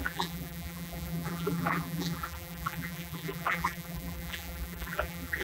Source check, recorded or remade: remade